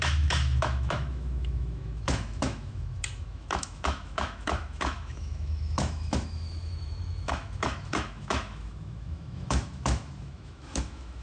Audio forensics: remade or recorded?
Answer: remade